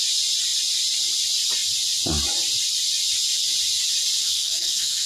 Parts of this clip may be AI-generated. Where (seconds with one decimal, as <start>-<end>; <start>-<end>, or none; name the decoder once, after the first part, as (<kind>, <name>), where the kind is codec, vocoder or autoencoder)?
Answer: 4.2-5.1 (codec, SNAC)